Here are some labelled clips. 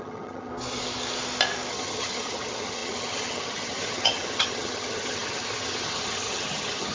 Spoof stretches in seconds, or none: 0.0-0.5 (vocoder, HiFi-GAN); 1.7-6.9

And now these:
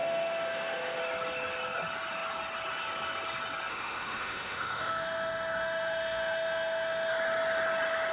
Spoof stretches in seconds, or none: 0.0-1.0 (autoencoder, DAC-VAE); 3.7-7.1

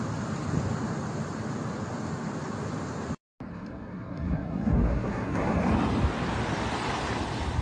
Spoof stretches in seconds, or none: 3.5-5.6 (codec, SNAC)

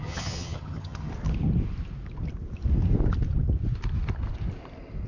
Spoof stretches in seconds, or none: 0.0-1.1 (vocoder, HiFi-GAN)

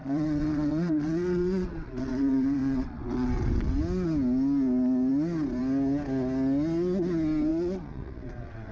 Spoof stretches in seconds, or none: 0.0-3.8 (vocoder, WaveNeXt); 7.5-8.7

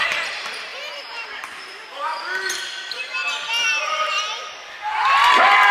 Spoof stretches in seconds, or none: 0.7-1.8 (vocoder, BigVGAN v2)

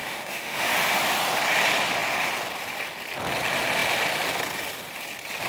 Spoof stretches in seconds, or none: 0.0-0.7 (autoencoder, DAC-VAE)

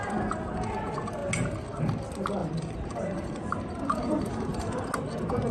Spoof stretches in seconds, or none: 2.4-4.9 (vocoder, BigVGAN v2)